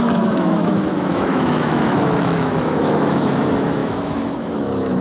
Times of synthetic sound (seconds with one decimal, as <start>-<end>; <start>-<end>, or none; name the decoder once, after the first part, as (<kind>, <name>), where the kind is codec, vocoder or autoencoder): 0.0-5.0 (autoencoder, DAC-VAE)